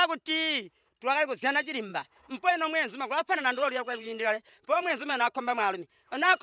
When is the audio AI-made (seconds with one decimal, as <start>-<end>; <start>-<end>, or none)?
1.9-2.5; 3.2-6.4